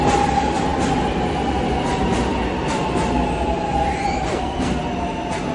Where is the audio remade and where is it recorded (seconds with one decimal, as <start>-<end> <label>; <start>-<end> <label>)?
0.0-4.3 recorded; 4.3-4.8 remade; 4.8-5.5 recorded